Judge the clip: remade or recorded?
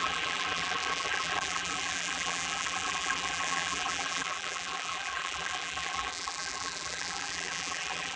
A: remade